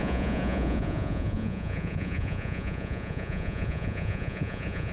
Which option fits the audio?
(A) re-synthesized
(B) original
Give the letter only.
A